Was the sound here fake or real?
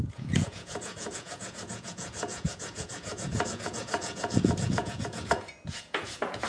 fake